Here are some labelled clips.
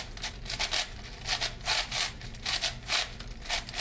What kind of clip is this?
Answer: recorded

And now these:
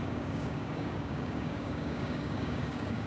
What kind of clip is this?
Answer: remade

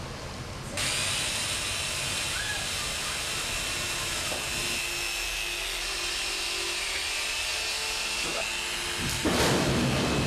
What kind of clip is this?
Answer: recorded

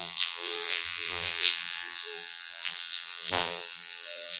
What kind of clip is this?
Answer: remade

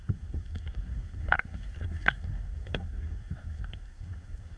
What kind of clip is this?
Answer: remade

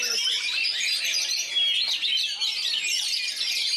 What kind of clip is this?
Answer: recorded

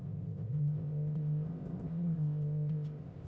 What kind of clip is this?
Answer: remade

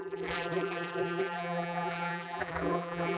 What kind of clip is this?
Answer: remade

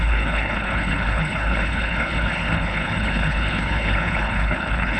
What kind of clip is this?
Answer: remade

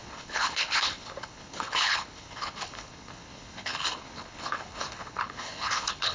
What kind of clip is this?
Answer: remade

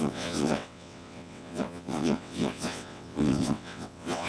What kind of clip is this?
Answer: remade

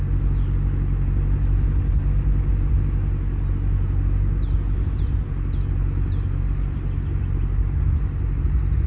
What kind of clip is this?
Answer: recorded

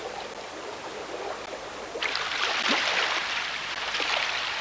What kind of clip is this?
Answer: recorded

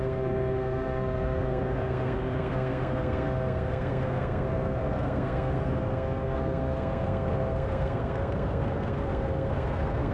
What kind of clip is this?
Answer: remade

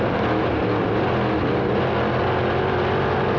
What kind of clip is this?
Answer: recorded